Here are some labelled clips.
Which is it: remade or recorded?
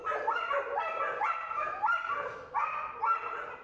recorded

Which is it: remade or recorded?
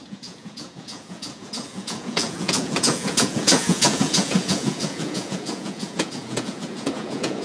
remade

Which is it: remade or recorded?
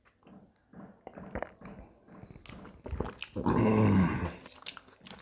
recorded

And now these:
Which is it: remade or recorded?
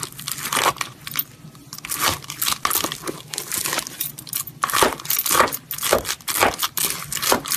recorded